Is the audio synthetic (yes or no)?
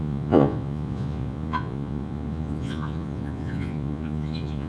yes